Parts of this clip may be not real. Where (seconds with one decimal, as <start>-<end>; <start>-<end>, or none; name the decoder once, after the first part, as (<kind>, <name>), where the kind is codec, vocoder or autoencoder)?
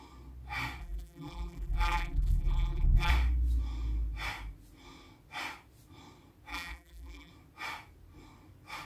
0.8-3.1 (vocoder, BigVGAN v2); 6.5-7.3